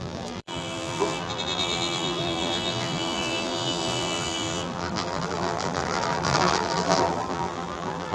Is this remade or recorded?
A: remade